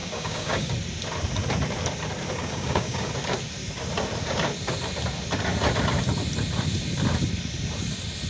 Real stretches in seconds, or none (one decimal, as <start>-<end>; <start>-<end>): 0.7-2.4; 3.1-8.3